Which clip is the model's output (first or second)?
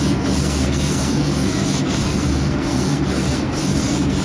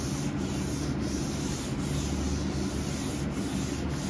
first